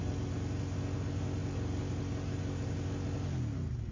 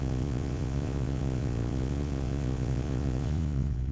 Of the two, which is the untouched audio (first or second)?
first